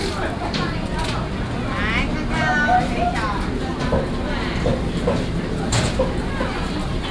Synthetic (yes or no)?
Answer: no